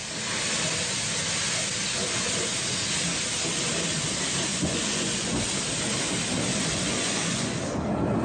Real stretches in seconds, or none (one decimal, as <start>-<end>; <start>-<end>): 0.0-4.5; 5.5-6.5; 7.6-8.2